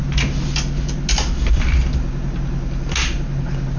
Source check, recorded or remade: recorded